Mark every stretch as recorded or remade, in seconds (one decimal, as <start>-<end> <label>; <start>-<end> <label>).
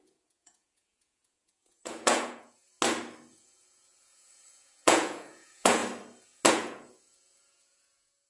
0.0-2.6 remade; 2.6-3.3 recorded; 3.3-5.8 remade; 5.8-6.5 recorded; 6.5-8.3 remade